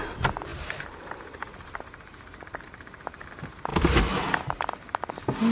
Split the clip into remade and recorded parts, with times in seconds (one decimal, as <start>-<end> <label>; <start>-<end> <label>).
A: 0.0-0.5 recorded; 0.5-3.3 remade; 3.3-5.5 recorded